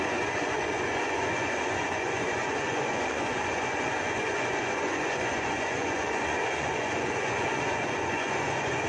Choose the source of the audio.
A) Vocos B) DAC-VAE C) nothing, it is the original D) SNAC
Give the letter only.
A